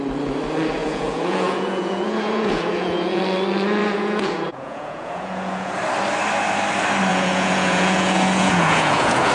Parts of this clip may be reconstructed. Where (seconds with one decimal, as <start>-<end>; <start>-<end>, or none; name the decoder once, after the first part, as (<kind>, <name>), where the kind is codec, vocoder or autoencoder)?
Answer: 0.8-3.2 (vocoder, Vocos); 3.8-5.8; 7.1-9.3

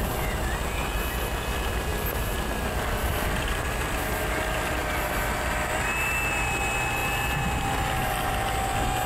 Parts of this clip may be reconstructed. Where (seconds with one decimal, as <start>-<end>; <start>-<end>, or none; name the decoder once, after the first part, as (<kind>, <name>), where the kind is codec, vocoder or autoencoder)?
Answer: none

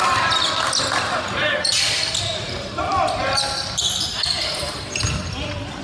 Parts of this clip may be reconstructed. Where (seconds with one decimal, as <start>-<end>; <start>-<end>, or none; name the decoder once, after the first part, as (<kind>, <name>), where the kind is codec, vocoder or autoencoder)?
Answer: none

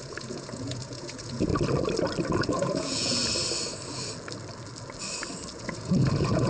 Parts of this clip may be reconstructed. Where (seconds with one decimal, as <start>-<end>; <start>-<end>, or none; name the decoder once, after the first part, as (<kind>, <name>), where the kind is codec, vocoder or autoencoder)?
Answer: 0.0-1.5 (vocoder, Vocos); 2.4-3.2; 5.5-6.5

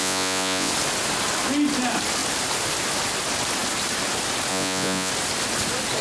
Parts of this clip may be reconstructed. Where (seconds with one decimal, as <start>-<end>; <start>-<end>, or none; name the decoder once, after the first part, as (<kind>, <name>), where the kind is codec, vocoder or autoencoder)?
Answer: 0.0-0.7 (vocoder, Vocos); 4.5-5.1

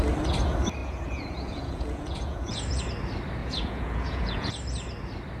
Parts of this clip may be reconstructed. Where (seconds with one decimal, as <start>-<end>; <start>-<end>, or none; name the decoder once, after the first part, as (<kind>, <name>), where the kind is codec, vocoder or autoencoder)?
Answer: 0.8-2.8 (vocoder, Vocos); 3.4-4.5

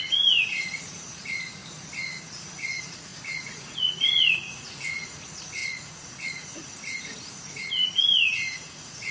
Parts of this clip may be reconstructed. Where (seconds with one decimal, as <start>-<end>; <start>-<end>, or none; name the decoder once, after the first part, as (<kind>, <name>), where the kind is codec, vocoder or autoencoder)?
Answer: 0.0-1.6 (vocoder, Vocos); 2.2-9.1